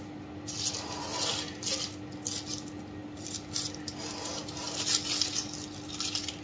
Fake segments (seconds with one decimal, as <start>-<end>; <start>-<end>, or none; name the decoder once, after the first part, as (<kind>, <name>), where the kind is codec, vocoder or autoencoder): 3.0-4.0 (vocoder, BigVGAN v2); 4.4-5.1